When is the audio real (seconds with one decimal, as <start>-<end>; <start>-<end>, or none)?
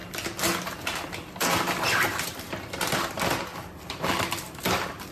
3.1-3.5; 4.5-5.1